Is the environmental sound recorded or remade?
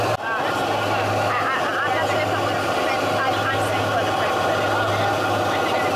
recorded